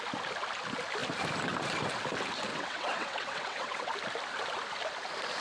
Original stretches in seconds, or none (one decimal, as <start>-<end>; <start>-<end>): 0.0-2.5; 3.9-5.4